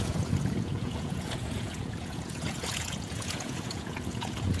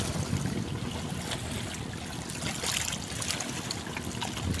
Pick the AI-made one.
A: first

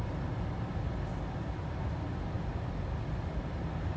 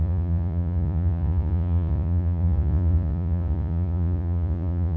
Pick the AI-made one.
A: second